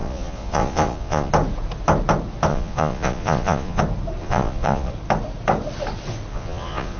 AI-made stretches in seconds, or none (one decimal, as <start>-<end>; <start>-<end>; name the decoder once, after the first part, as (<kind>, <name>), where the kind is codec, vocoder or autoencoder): 0.0-1.3 (vocoder, Vocos); 2.5-3.8; 4.2-4.9; 6.3-7.0